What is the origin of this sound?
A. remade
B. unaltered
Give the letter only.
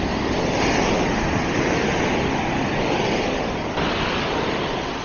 B